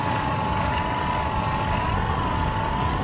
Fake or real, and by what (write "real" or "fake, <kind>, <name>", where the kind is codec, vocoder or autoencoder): real